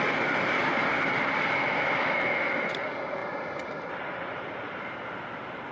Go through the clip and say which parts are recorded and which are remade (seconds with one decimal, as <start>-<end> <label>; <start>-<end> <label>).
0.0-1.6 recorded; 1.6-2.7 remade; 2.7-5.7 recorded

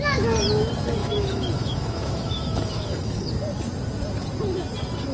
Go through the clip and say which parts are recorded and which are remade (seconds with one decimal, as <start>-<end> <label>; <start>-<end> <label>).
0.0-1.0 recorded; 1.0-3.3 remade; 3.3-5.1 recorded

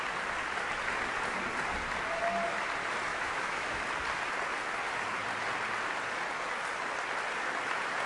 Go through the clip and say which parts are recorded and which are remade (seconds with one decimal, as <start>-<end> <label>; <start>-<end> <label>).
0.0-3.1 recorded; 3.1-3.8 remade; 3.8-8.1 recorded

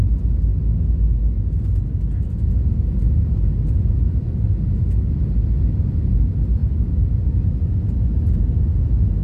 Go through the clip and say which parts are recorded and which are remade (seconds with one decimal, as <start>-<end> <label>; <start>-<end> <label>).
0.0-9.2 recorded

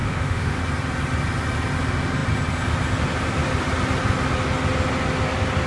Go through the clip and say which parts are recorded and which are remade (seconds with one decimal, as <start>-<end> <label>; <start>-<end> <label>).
0.0-0.6 remade; 0.6-5.7 recorded